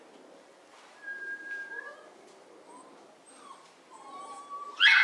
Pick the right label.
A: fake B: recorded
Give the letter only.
B